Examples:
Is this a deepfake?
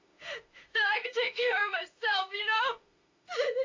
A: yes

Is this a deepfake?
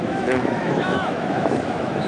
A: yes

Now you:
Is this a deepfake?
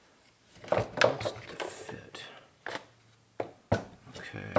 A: no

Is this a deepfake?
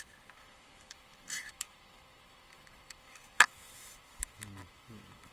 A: yes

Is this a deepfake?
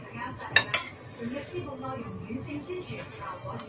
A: no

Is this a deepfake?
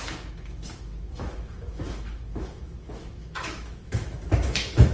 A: yes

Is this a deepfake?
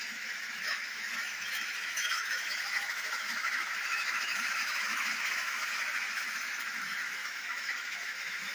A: yes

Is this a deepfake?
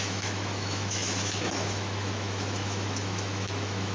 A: yes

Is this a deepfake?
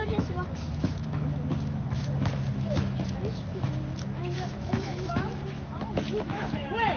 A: yes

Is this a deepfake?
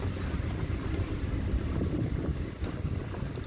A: no